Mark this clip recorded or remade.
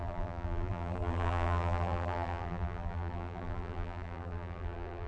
remade